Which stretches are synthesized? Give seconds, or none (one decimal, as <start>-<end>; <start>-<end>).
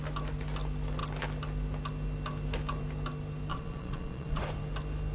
3.5-4.4